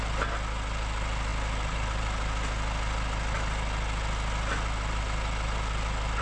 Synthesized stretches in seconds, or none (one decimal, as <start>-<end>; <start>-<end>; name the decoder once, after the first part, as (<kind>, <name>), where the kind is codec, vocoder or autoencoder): none